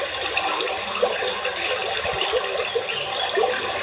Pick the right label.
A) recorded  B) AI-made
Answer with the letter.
A